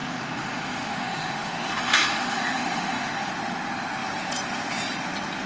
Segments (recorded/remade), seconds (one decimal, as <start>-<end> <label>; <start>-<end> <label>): 0.0-3.3 remade; 3.3-5.5 recorded

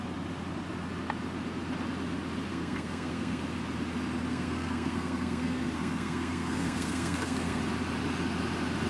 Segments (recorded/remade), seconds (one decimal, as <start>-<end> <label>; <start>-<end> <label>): 0.0-2.5 recorded; 2.5-3.4 remade; 3.4-4.3 recorded; 4.3-7.6 remade; 7.6-8.9 recorded

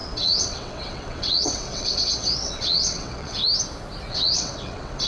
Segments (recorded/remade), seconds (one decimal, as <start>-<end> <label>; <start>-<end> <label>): 0.0-3.4 remade; 3.4-4.1 recorded; 4.1-5.1 remade

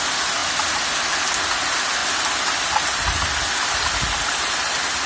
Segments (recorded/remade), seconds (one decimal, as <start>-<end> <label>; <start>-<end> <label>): 0.0-5.1 recorded

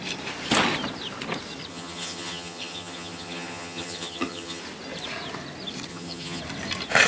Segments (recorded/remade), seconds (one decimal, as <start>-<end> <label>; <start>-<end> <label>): 0.0-1.7 recorded; 1.7-4.6 remade; 4.6-5.9 recorded; 5.9-6.4 remade; 6.4-7.1 recorded

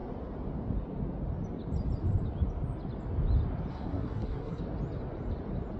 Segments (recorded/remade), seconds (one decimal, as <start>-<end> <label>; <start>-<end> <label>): 0.0-3.7 recorded; 3.7-4.6 remade; 4.6-5.8 recorded

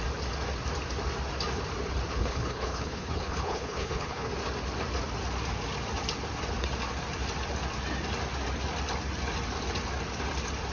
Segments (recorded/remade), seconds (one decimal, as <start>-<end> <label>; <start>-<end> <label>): 0.0-2.2 recorded; 2.2-4.3 remade; 4.3-10.7 recorded